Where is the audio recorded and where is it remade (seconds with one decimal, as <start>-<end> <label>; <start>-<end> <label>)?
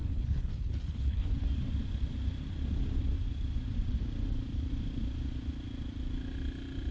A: 0.0-1.3 remade; 1.3-6.9 recorded